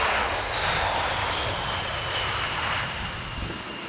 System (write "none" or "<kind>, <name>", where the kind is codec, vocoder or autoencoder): none